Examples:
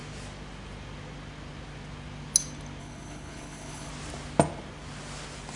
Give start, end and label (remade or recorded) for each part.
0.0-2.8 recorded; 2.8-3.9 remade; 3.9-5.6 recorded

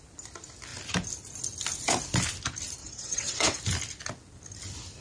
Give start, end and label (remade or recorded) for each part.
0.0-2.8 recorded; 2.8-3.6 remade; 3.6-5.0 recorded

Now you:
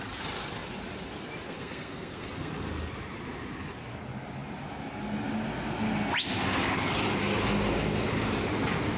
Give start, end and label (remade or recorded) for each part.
0.0-1.5 recorded; 1.5-2.5 remade; 2.5-9.0 recorded